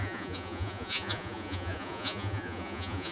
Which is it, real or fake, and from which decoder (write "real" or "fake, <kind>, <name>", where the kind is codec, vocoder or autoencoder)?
fake, vocoder, Vocos